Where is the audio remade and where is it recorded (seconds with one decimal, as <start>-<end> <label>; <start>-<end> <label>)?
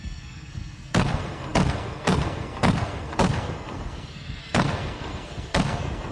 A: 0.0-6.1 remade